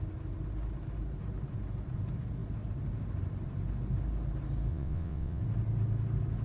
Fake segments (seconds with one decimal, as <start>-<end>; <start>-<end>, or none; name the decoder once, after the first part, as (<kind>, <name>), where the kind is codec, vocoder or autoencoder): 4.7-5.4 (vocoder, WaveNeXt)